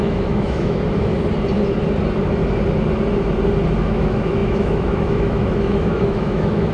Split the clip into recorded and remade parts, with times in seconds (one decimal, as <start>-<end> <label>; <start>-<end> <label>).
0.0-1.1 remade; 1.1-3.8 recorded; 3.8-6.7 remade